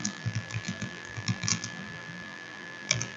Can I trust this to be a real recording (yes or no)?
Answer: no